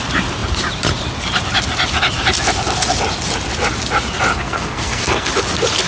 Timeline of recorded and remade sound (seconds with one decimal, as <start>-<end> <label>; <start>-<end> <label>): 0.0-4.3 recorded; 4.3-5.3 remade; 5.3-5.9 recorded